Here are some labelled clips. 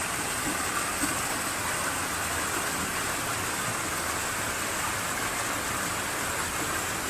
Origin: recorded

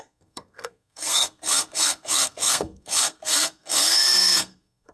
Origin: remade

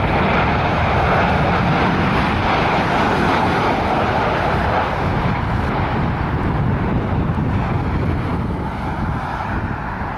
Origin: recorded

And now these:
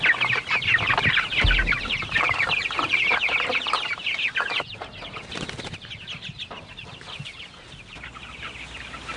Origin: recorded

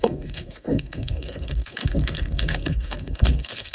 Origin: remade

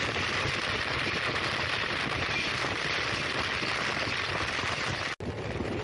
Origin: recorded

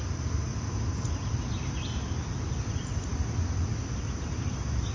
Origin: recorded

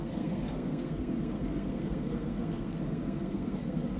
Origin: remade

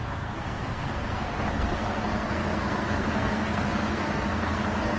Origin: remade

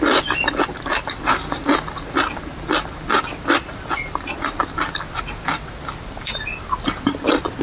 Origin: recorded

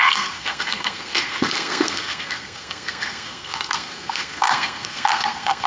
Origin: remade